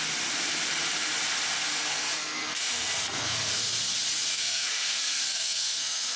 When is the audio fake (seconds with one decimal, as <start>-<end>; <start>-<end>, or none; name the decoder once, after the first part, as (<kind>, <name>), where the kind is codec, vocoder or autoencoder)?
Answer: 1.7-3.6 (codec, SNAC); 4.3-6.2

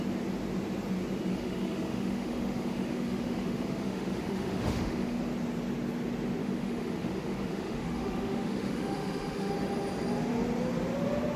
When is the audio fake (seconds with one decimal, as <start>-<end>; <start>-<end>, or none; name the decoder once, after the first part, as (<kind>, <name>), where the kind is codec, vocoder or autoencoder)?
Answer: 1.3-5.2 (autoencoder, DAC-VAE); 6.4-9.5

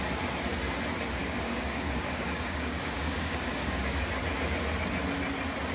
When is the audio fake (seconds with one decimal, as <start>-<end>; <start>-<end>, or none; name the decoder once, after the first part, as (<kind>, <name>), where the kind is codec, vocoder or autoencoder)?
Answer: 1.2-4.1 (codec, DAC)

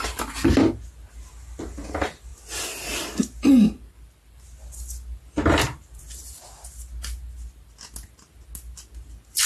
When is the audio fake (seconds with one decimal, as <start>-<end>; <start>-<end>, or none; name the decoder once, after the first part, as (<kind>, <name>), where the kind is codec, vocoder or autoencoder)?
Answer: none

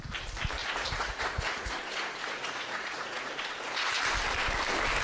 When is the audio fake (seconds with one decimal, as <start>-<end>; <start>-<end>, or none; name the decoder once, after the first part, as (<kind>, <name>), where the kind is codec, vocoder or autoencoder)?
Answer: 0.6-3.3 (vocoder, Vocos)

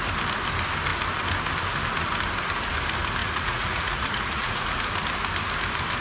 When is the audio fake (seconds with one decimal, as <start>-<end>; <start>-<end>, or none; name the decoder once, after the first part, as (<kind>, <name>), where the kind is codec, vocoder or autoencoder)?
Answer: 3.2-4.8 (vocoder, Vocos)

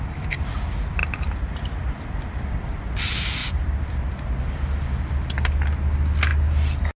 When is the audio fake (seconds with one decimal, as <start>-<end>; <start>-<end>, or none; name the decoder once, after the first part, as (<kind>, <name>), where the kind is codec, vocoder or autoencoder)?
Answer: 1.0-2.8 (vocoder, BigVGAN v2); 3.4-3.9